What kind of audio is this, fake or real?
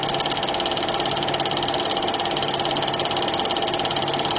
real